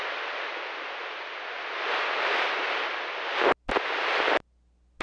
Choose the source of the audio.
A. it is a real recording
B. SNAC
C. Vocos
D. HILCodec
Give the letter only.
A